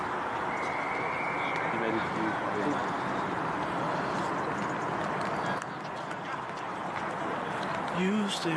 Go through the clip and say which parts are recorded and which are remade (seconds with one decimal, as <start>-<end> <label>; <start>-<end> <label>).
0.0-8.6 recorded